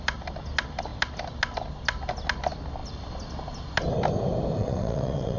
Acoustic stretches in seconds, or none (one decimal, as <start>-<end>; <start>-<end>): 0.0-4.6